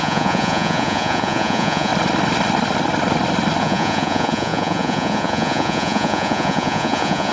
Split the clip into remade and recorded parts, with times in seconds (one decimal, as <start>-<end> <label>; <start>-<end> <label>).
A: 0.0-1.9 remade; 1.9-3.6 recorded; 3.6-7.3 remade

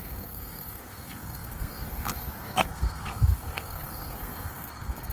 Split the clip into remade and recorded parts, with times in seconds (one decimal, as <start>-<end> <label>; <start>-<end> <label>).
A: 0.0-5.1 remade

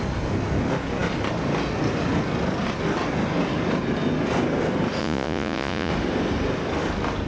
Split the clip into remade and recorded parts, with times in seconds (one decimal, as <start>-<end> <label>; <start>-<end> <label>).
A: 0.0-5.0 recorded; 5.0-5.9 remade; 5.9-7.3 recorded

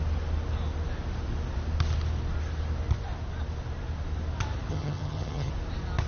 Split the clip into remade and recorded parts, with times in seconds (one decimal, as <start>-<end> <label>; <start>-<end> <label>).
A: 0.0-4.7 recorded; 4.7-5.5 remade; 5.5-6.1 recorded

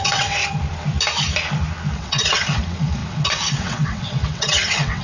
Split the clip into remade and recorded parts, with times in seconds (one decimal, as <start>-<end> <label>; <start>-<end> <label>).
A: 0.0-0.4 remade; 0.4-1.9 recorded; 1.9-5.0 remade

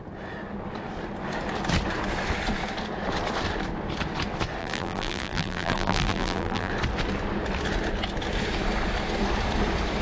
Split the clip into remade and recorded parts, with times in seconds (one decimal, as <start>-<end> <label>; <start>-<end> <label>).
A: 0.0-4.6 recorded; 4.6-6.7 remade; 6.7-10.0 recorded

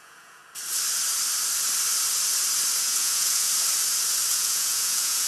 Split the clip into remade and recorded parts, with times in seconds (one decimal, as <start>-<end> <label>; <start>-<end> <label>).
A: 0.0-0.4 remade; 0.4-2.8 recorded; 2.8-3.5 remade; 3.5-4.3 recorded; 4.3-5.3 remade

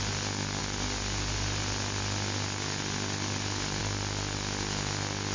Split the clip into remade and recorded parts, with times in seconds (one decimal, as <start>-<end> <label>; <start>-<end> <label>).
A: 0.0-5.3 recorded